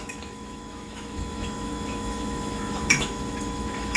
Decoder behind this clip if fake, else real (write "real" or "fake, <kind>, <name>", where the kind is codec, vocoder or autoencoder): fake, autoencoder, DAC-VAE